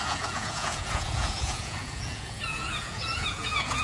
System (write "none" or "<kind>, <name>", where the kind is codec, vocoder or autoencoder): vocoder, Vocos